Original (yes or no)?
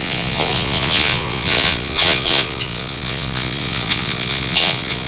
no